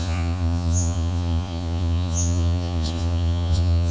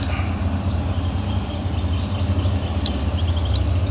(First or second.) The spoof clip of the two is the first